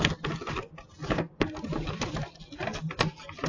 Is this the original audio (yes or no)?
yes